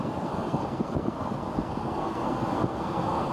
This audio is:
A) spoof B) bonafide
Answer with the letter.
A